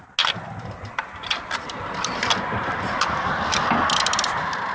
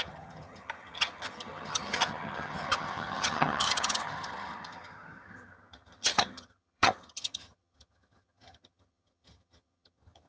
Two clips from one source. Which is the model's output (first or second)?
second